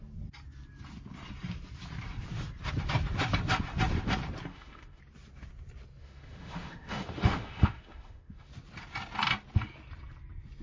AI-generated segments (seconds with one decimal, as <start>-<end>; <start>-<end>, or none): 4.5-5.0; 6.0-8.5